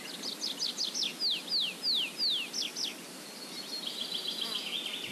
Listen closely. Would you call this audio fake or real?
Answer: real